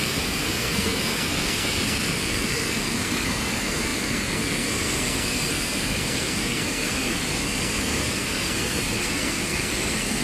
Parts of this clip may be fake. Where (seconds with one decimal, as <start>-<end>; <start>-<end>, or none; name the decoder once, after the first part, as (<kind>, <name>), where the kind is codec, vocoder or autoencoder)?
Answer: 0.0-10.2 (codec, SNAC)